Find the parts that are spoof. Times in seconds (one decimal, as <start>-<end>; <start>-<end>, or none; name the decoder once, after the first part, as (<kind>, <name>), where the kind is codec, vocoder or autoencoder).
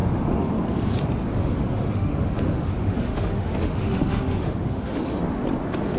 0.0-0.5 (autoencoder, DAC-VAE); 1.4-5.0